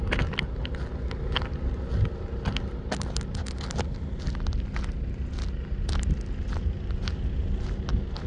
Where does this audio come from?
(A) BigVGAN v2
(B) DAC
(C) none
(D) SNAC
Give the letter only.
C